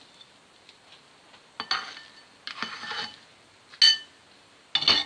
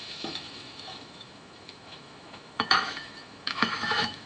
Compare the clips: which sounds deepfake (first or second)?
second